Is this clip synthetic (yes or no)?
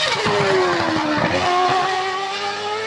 no